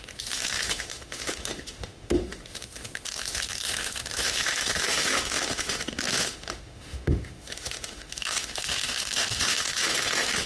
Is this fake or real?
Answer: fake